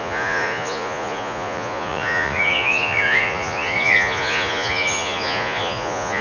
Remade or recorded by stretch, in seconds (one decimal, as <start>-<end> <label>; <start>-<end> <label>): 0.0-6.2 remade